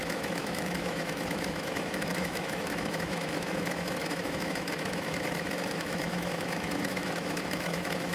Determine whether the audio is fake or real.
fake